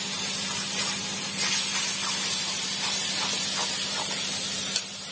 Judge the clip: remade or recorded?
recorded